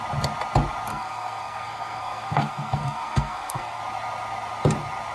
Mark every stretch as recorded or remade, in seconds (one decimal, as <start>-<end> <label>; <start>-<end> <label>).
0.0-0.9 recorded; 0.9-3.8 remade; 3.8-5.1 recorded